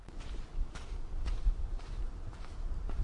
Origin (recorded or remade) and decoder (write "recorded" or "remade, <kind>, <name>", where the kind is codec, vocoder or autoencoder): remade, vocoder, BigVGAN v2